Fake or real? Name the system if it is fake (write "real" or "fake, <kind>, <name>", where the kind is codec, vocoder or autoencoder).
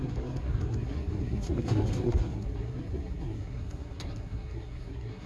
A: fake, codec, SNAC